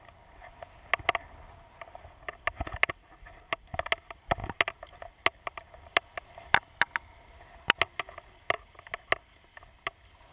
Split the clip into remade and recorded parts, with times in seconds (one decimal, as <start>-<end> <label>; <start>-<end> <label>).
0.0-10.3 recorded